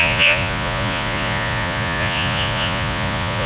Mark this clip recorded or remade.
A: remade